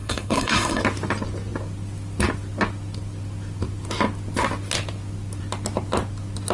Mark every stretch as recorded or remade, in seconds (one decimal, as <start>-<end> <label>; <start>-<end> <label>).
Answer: 0.0-0.8 remade; 0.8-6.5 recorded